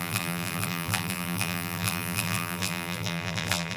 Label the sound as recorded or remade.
remade